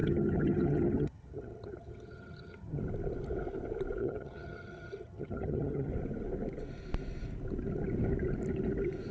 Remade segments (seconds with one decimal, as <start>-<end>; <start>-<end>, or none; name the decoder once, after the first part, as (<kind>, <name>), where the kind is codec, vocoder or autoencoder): 0.0-2.8 (vocoder, HiFi-GAN); 4.0-5.9